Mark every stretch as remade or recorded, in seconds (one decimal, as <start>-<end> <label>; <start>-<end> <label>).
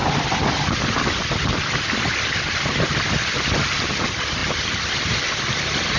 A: 0.0-6.0 recorded